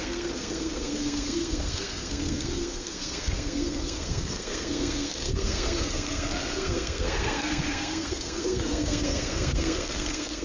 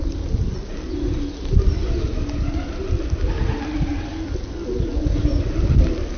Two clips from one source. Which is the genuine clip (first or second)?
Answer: second